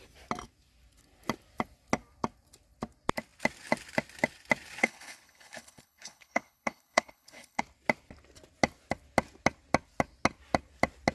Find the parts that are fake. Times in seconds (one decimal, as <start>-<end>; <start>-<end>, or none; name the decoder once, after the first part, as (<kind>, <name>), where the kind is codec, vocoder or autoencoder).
4.8-7.6 (codec, HILCodec)